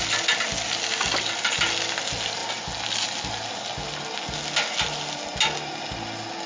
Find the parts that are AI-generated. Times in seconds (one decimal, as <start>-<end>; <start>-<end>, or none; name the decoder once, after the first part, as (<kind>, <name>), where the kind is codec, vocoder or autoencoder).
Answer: none